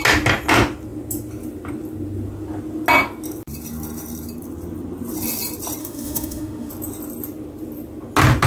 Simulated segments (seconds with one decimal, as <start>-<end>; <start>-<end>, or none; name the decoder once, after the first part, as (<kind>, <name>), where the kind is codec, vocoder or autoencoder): 5.8-6.7 (autoencoder, DAC-VAE)

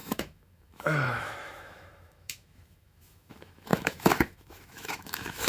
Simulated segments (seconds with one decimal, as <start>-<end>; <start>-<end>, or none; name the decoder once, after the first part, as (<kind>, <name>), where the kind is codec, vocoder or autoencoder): 0.0-5.5 (autoencoder, DAC-VAE)

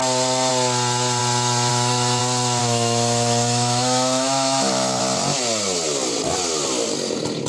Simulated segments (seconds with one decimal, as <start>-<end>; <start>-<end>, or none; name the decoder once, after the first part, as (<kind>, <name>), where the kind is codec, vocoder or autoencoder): 1.7-2.2 (autoencoder, DAC-VAE); 2.6-5.0

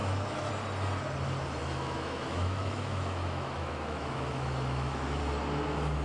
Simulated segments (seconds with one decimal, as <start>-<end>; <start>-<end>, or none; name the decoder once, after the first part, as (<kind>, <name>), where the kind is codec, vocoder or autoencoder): 0.0-0.5 (autoencoder, DAC-VAE); 1.6-5.2